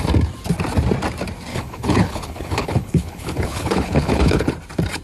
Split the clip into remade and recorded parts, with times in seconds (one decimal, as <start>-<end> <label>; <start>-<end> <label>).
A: 0.0-1.5 recorded; 1.5-4.5 remade; 4.5-5.0 recorded